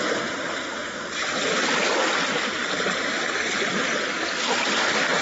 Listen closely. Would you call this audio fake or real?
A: real